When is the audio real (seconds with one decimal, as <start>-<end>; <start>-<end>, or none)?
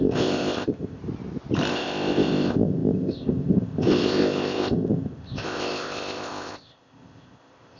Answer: 1.0-1.7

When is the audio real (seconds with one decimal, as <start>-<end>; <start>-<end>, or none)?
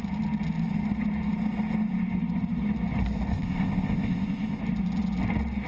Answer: 0.0-3.3; 4.6-5.7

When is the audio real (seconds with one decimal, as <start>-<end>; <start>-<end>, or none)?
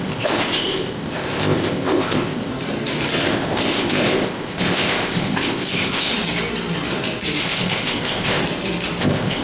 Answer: 2.5-3.3; 6.1-7.4; 8.4-9.0